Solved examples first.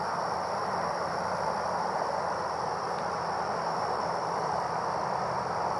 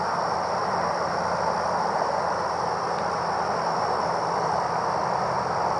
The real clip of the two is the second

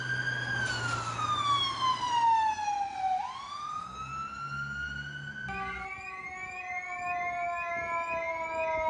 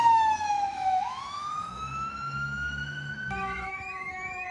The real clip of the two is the first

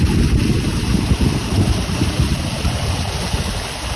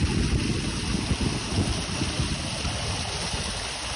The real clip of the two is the second